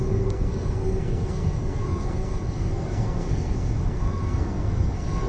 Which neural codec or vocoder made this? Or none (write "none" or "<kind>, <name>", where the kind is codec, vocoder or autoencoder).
codec, SNAC